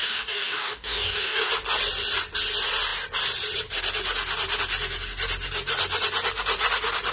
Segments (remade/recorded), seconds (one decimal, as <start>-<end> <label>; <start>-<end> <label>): 0.0-1.5 remade; 1.5-7.1 recorded